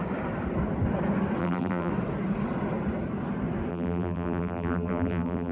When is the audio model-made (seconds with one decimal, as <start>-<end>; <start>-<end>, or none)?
1.4-1.9; 3.7-5.5